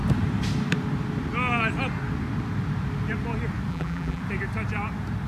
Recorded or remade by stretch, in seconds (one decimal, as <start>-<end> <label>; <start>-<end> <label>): 0.0-3.7 recorded; 3.7-4.2 remade; 4.2-5.3 recorded